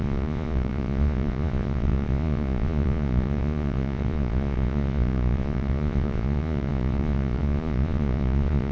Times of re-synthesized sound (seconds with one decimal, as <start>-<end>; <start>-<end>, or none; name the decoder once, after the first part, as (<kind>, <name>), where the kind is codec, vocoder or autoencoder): 0.0-8.7 (vocoder, Vocos)